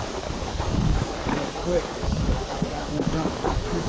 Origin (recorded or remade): remade